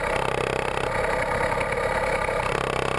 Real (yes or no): yes